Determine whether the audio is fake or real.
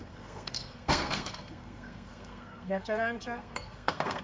fake